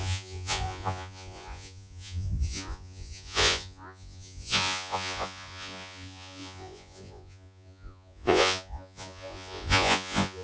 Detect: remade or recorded remade